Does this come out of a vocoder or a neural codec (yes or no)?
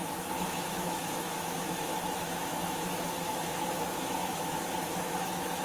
yes